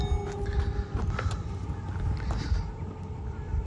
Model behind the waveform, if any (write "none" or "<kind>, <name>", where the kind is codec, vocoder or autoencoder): none